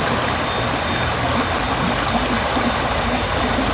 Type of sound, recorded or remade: recorded